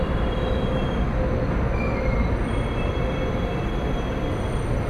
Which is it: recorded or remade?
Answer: recorded